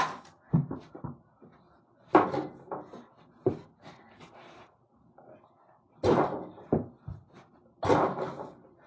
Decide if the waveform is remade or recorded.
recorded